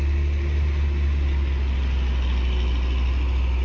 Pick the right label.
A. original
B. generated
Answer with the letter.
A